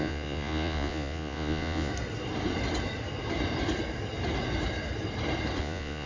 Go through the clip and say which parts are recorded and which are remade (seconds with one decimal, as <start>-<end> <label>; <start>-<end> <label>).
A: 0.0-1.9 remade; 1.9-5.6 recorded; 5.6-6.1 remade